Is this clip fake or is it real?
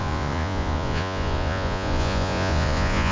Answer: fake